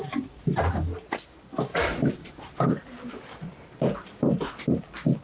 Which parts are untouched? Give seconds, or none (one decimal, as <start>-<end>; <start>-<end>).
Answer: 0.6-1.7; 4.8-5.2